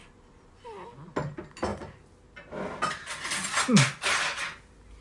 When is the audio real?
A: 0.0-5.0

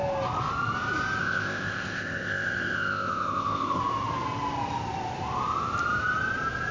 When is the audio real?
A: 0.0-1.2; 3.8-6.7

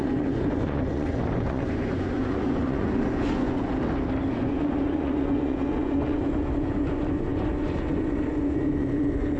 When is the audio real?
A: 3.7-4.3